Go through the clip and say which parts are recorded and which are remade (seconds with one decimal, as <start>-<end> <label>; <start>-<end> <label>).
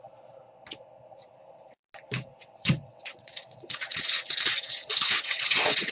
0.0-2.3 recorded; 2.3-5.9 remade